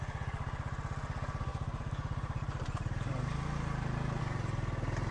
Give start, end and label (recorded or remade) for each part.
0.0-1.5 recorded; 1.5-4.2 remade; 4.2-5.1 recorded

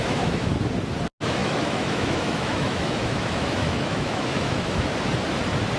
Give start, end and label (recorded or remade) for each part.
0.0-0.5 remade; 0.5-1.4 recorded; 1.4-4.9 remade; 4.9-5.8 recorded

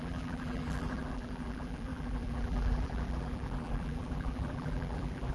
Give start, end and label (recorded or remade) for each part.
0.0-5.3 remade

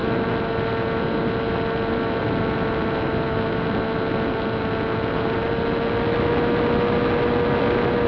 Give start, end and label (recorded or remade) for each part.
0.0-8.1 recorded

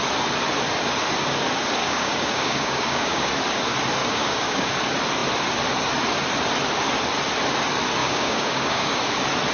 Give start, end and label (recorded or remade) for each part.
0.0-1.8 recorded; 1.8-3.3 remade; 3.3-4.0 recorded; 4.0-4.7 remade; 4.7-8.0 recorded; 8.0-9.0 remade; 9.0-9.5 recorded